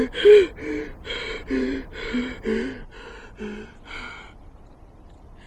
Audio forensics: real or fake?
real